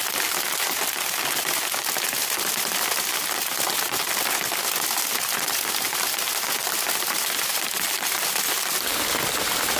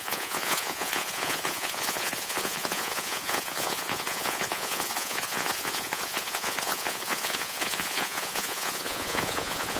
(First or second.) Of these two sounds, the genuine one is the first